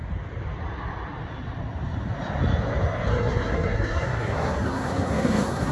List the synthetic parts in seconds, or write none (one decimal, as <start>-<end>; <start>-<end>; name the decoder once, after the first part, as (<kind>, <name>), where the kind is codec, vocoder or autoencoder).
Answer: 3.1-5.7 (codec, SNAC)